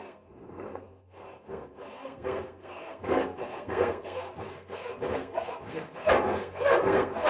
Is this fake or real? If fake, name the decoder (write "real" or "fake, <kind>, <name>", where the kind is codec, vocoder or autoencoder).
fake, codec, SNAC